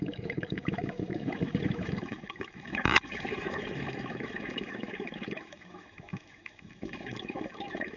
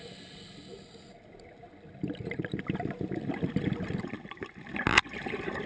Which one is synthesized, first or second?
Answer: first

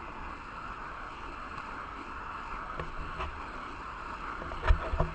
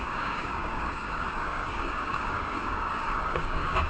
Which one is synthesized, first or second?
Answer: second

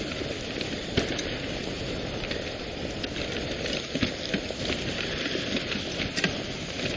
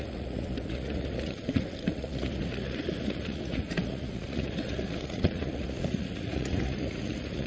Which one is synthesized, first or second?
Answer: second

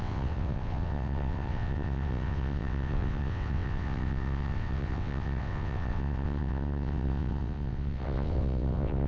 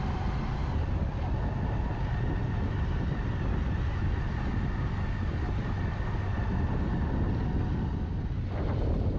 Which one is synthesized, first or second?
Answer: first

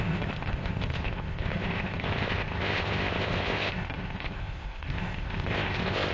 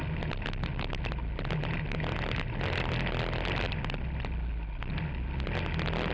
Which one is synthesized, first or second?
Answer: first